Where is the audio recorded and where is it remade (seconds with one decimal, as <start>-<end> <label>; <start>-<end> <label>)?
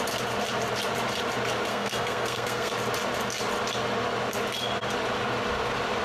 0.0-1.7 recorded; 1.7-2.7 remade; 2.7-6.0 recorded